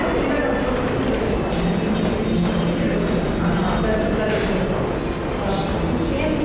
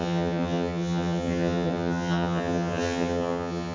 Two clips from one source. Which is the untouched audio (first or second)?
first